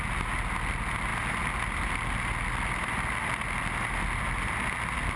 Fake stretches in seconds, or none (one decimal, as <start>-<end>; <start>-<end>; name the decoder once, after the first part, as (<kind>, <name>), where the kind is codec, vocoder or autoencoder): none